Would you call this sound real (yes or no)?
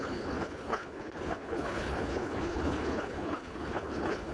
no